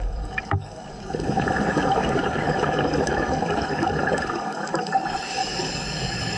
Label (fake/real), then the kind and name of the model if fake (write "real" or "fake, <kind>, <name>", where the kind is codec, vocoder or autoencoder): fake, codec, DAC